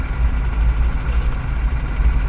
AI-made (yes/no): no